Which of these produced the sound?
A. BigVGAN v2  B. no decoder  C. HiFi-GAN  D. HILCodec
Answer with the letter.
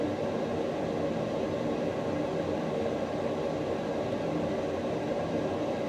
A